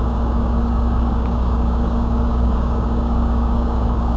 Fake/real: fake